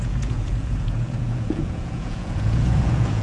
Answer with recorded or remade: remade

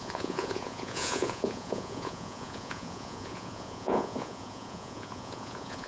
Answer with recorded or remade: remade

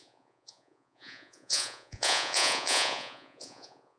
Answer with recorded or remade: remade